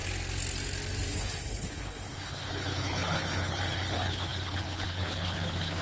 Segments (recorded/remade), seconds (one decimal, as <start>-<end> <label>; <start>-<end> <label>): 0.0-1.1 recorded; 1.1-5.8 remade

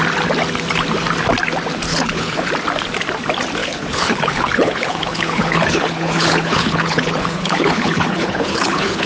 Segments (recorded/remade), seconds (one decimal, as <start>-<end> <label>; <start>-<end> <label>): 0.0-1.9 recorded; 1.9-2.5 remade; 2.5-3.6 recorded; 3.6-9.1 remade

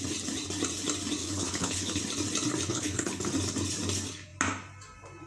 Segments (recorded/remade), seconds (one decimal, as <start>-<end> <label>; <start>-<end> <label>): 0.0-1.2 recorded; 1.2-2.0 remade; 2.0-2.7 recorded; 2.7-3.3 remade; 3.3-5.3 recorded

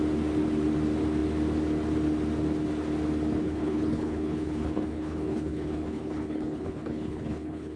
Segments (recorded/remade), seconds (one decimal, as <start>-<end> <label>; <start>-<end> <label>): 0.0-3.4 recorded; 3.4-7.8 remade

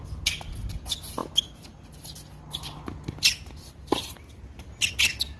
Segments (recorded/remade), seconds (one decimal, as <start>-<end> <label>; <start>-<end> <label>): 0.0-5.4 recorded